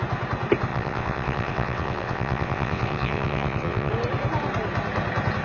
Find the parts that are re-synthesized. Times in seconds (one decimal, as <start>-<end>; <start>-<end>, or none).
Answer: 0.7-3.9